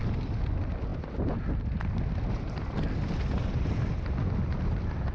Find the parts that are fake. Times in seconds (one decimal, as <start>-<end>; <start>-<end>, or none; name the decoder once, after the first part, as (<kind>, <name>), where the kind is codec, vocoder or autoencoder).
none

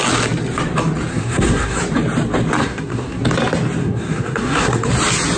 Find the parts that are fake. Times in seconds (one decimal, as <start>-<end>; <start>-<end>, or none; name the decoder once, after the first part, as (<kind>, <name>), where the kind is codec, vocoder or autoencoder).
1.1-1.8 (codec, SNAC); 2.6-3.2; 3.8-4.9

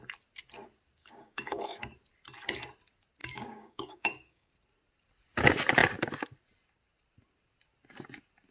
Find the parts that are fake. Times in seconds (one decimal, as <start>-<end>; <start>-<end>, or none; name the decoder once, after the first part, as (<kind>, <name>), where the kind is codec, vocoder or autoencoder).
1.0-1.8 (codec, DAC); 3.2-4.5

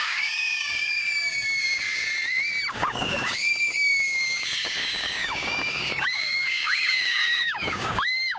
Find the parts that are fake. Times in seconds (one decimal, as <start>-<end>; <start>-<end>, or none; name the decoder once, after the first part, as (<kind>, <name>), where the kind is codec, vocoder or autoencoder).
0.0-2.1 (codec, DAC); 2.7-8.4